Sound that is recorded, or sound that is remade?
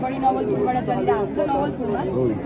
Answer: recorded